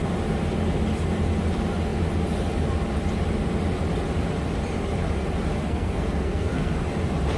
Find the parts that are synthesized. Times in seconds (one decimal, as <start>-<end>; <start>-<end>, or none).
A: 5.6-6.8